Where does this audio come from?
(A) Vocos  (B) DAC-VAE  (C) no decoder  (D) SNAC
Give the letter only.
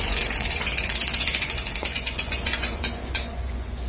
A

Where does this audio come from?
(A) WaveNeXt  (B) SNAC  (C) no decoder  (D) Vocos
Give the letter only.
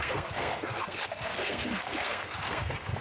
B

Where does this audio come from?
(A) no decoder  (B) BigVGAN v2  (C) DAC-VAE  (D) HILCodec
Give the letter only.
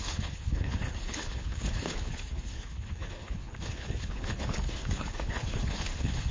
D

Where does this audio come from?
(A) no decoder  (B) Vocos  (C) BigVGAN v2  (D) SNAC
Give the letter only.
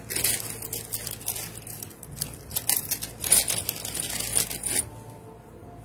A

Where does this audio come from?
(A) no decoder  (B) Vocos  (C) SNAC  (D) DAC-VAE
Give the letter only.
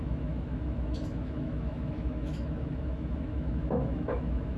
D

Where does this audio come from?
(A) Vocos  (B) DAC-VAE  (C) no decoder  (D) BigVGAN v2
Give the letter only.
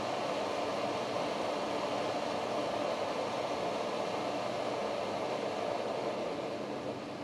C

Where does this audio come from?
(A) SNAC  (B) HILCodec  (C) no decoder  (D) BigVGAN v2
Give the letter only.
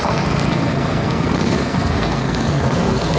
A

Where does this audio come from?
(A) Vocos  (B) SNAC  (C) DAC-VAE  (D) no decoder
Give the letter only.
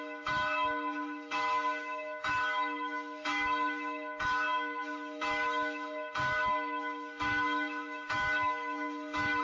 C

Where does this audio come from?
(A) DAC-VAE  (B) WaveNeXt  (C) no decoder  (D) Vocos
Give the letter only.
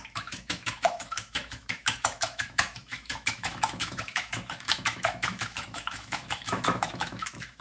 A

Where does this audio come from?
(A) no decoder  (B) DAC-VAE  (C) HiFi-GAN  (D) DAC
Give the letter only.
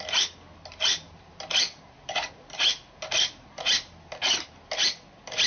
A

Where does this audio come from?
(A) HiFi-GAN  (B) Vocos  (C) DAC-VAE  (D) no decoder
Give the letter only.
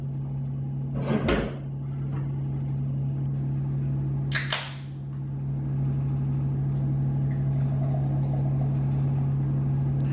D